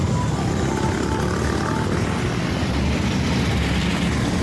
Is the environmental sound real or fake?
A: real